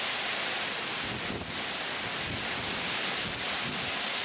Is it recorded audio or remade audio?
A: recorded